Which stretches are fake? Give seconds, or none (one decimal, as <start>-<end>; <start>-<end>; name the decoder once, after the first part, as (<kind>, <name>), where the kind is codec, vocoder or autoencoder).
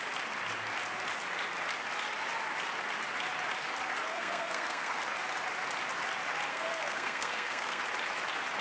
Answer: 4.1-5.0 (codec, SNAC); 6.5-7.8